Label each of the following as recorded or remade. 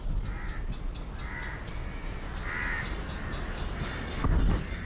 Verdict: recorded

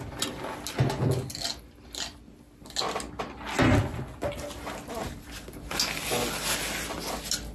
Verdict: recorded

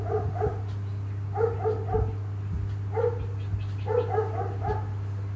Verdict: recorded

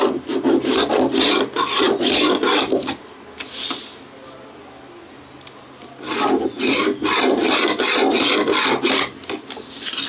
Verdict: recorded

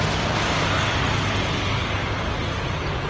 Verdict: recorded